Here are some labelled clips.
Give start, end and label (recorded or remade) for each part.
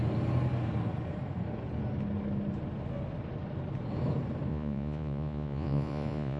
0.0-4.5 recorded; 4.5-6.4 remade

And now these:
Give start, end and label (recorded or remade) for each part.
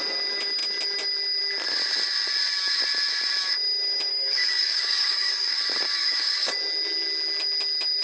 0.0-4.1 recorded; 4.1-5.6 remade; 5.6-6.0 recorded; 6.0-6.5 remade; 6.5-8.0 recorded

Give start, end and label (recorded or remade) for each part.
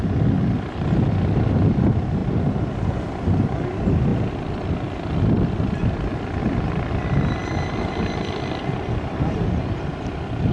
0.0-10.5 recorded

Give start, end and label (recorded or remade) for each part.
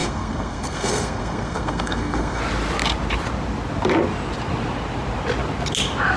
0.0-2.4 remade; 2.4-6.2 recorded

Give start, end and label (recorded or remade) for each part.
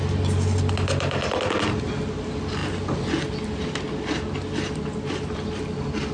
0.0-6.1 recorded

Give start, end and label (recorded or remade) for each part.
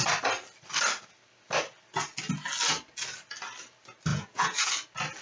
0.0-4.1 recorded; 4.1-4.7 remade; 4.7-5.2 recorded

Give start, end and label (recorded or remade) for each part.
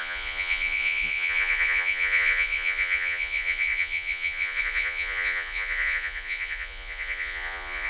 0.0-7.9 remade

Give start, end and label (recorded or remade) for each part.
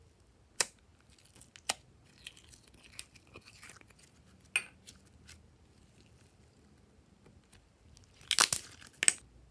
0.0-9.5 recorded